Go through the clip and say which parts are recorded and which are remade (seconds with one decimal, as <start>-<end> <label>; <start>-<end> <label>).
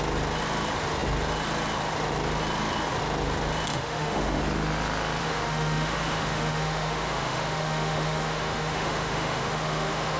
0.0-3.7 recorded; 3.7-4.4 remade; 4.4-5.2 recorded; 5.2-10.2 remade